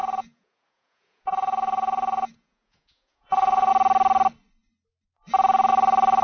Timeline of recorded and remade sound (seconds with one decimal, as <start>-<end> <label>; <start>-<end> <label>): 0.0-3.7 remade; 3.7-6.2 recorded